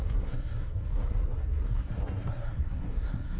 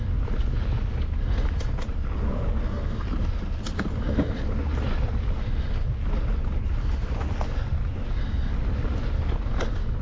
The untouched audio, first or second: second